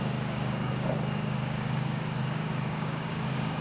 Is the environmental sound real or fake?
fake